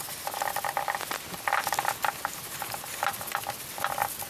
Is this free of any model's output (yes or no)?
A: yes